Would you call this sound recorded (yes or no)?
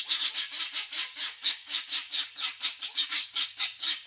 no